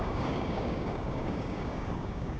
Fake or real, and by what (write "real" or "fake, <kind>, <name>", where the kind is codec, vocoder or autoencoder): fake, codec, DAC